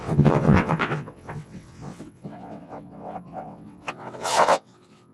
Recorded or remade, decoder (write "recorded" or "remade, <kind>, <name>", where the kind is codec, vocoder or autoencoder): remade, vocoder, WaveNeXt